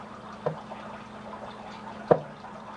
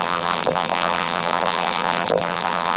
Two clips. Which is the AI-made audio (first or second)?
second